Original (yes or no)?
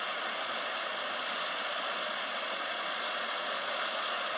no